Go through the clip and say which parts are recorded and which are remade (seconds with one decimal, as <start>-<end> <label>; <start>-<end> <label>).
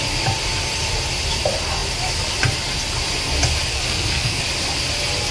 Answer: 0.0-3.7 recorded; 3.7-4.4 remade; 4.4-5.3 recorded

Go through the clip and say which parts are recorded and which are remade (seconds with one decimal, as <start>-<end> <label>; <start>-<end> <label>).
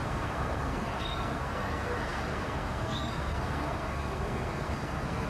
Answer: 0.0-5.3 remade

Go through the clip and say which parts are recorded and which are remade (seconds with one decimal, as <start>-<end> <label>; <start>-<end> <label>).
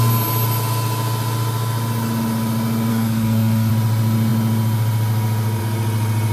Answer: 0.0-2.9 recorded; 2.9-3.7 remade; 3.7-6.3 recorded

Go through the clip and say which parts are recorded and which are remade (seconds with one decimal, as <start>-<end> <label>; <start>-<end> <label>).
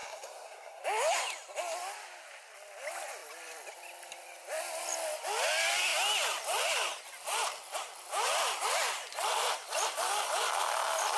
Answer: 0.0-0.8 remade; 0.8-11.2 recorded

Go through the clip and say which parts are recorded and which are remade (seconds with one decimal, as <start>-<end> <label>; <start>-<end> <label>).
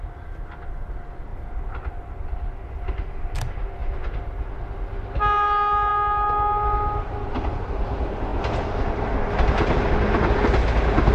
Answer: 0.0-11.1 recorded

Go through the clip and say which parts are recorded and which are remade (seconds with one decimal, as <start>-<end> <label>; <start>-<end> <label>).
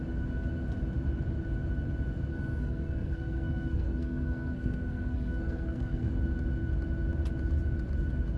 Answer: 0.0-2.3 recorded; 2.3-6.1 remade; 6.1-8.4 recorded